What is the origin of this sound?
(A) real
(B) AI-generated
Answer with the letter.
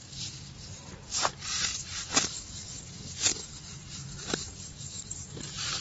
B